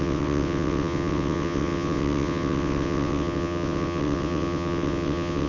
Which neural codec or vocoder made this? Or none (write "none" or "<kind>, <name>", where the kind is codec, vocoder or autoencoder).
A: vocoder, WaveNeXt